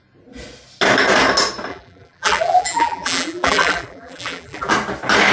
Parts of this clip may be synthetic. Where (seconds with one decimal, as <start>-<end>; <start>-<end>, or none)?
1.7-4.7